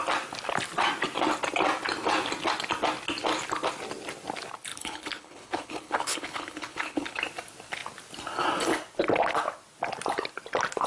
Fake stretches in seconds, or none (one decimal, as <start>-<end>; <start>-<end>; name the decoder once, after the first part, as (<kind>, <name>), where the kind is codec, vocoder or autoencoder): 4.7-7.2 (codec, HILCodec)